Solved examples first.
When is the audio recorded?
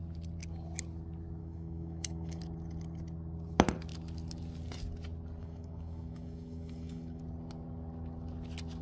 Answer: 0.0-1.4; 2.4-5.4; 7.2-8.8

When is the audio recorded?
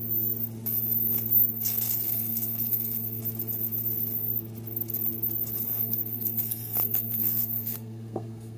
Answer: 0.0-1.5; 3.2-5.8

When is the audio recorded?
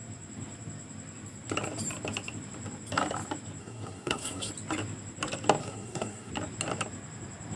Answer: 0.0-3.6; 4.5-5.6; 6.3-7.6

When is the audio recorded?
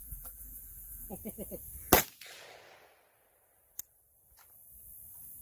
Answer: 1.1-5.4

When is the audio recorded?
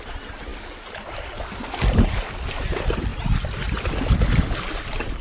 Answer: 0.0-5.2